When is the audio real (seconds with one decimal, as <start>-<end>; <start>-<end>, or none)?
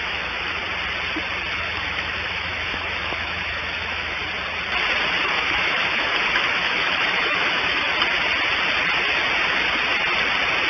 0.6-1.5; 4.2-5.2; 7.9-10.7